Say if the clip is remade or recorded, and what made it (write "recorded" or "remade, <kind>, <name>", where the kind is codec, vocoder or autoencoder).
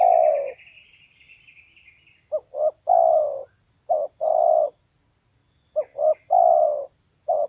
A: recorded